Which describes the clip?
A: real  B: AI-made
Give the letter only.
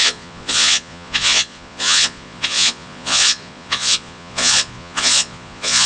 B